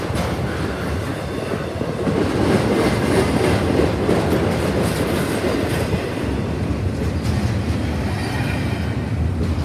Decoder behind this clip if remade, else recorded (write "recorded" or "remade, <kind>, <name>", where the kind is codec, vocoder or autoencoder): recorded